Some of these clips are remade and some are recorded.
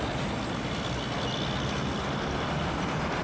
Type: recorded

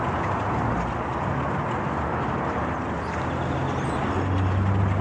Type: recorded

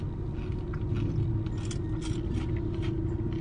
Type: recorded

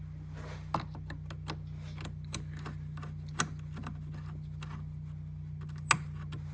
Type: recorded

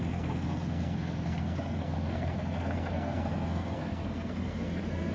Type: remade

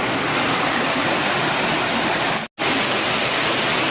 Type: recorded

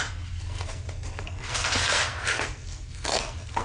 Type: remade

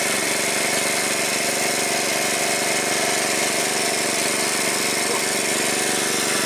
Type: recorded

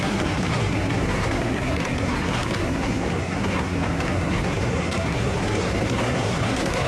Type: remade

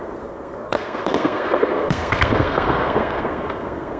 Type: remade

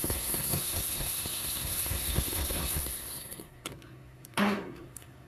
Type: remade